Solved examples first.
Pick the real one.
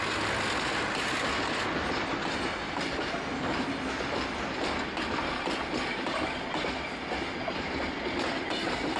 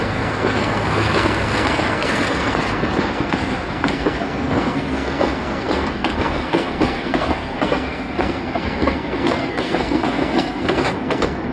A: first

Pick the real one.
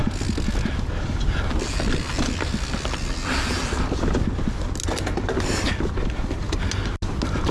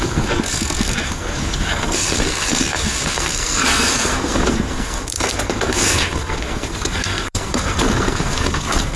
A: first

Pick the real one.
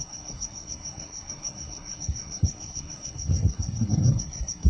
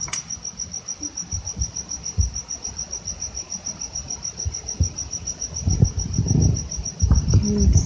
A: second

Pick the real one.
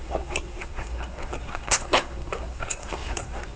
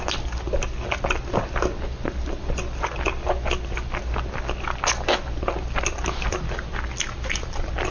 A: second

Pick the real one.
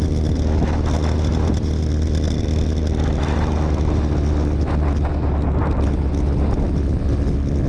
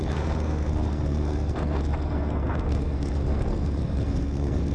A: first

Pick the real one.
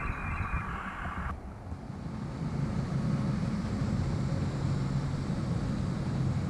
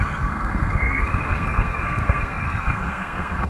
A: first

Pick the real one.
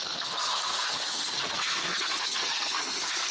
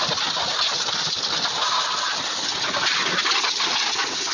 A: second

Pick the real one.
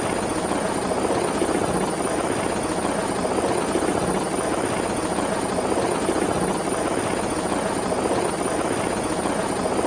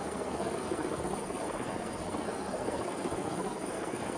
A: first